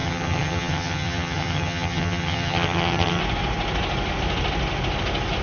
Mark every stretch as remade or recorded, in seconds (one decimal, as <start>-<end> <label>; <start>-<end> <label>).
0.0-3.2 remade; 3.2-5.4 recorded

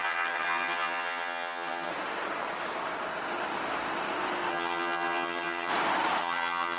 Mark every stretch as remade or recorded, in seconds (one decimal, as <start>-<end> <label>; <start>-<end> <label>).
0.0-1.9 remade; 1.9-4.5 recorded; 4.5-5.7 remade; 5.7-6.2 recorded; 6.2-6.8 remade

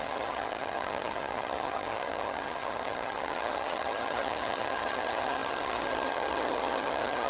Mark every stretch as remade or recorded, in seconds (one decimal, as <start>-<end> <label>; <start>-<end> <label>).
0.0-7.3 remade

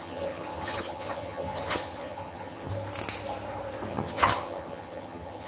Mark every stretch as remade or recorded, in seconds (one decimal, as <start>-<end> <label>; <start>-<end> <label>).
0.0-2.7 remade; 2.7-3.9 recorded; 3.9-5.5 remade

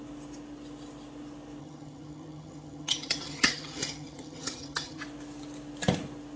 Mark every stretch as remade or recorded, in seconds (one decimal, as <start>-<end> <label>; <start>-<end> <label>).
0.0-1.6 recorded; 1.6-5.0 remade; 5.0-6.4 recorded

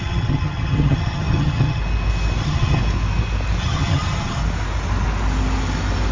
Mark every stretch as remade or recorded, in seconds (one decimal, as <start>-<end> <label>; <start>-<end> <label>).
0.0-1.8 remade; 1.8-2.4 recorded; 2.4-2.8 remade; 2.8-3.6 recorded; 3.6-4.4 remade; 4.4-6.1 recorded